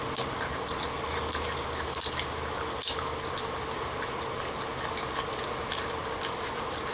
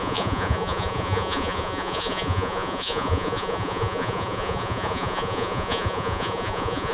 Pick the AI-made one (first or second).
second